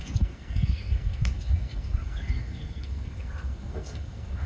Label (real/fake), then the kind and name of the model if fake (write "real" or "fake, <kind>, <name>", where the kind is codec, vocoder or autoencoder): fake, codec, SNAC